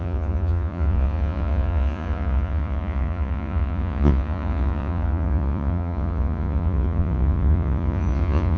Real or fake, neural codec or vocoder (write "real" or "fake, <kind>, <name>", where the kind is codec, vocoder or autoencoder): fake, vocoder, Vocos